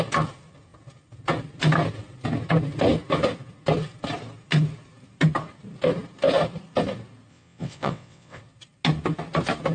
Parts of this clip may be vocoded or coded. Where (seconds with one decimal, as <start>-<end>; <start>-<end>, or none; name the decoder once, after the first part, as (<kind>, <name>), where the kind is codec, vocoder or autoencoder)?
7.3-8.4 (vocoder, WaveNeXt)